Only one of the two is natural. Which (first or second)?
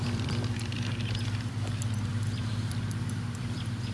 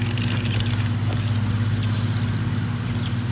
second